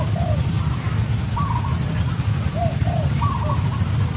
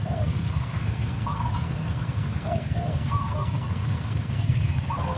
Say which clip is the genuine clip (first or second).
first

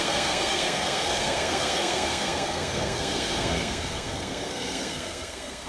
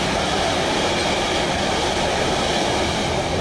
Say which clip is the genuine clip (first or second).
second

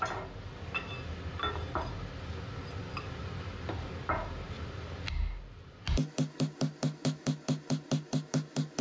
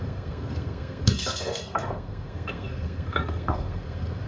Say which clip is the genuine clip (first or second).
first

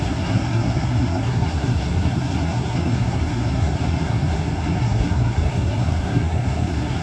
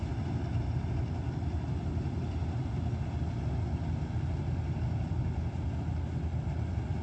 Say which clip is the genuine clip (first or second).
second